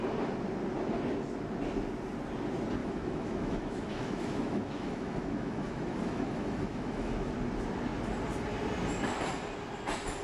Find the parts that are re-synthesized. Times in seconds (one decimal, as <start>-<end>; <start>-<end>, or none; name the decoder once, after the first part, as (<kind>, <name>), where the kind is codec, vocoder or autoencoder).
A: 2.8-7.3 (autoencoder, DAC-VAE)